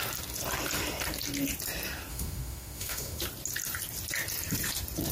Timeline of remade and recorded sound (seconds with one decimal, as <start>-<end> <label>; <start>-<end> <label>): 0.0-2.1 recorded; 2.1-3.2 remade; 3.2-5.1 recorded